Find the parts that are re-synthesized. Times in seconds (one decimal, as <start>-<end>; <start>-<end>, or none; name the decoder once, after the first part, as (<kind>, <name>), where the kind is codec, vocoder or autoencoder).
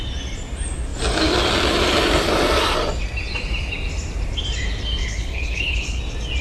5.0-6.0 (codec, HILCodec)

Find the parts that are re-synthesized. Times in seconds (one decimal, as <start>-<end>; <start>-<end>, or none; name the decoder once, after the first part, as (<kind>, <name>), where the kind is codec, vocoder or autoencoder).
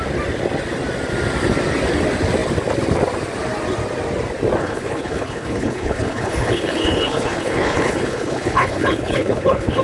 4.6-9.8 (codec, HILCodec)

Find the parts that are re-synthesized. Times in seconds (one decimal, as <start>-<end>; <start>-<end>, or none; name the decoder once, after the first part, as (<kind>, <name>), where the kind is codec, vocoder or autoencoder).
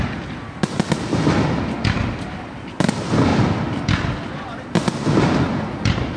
none